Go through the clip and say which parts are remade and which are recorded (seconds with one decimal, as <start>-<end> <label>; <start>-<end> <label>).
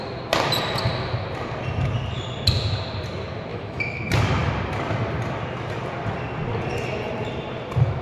0.0-3.5 recorded; 3.5-4.0 remade; 4.0-8.0 recorded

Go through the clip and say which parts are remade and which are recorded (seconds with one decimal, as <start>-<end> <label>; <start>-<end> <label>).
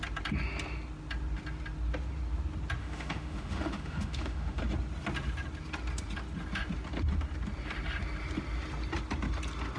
0.0-2.8 recorded; 2.8-4.6 remade; 4.6-9.8 recorded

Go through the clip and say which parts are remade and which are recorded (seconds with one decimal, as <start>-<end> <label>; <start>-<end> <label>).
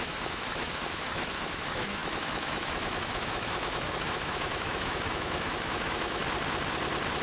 0.0-6.2 remade; 6.2-7.2 recorded